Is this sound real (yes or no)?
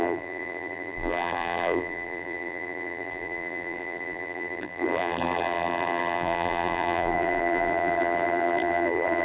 no